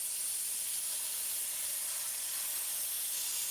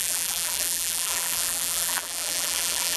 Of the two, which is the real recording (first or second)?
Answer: first